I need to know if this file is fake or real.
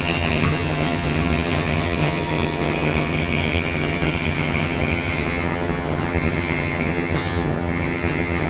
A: fake